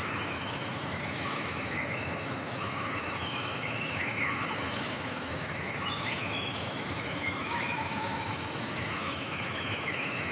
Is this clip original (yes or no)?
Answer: no